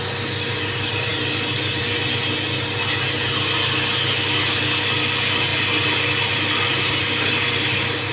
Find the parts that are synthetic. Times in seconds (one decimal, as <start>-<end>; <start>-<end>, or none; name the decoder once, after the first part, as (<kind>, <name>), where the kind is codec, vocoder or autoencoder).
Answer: none